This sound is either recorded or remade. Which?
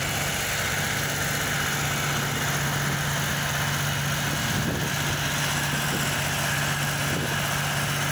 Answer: recorded